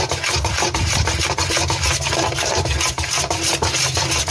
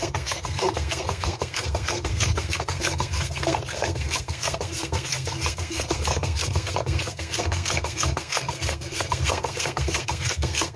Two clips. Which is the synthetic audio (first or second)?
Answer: second